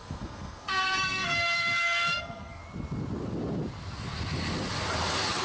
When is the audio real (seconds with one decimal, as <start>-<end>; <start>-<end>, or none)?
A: 2.6-5.4